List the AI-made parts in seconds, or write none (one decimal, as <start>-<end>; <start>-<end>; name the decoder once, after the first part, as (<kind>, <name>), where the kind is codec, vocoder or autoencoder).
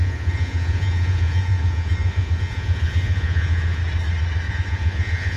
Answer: 0.0-3.8 (vocoder, Vocos); 4.5-5.4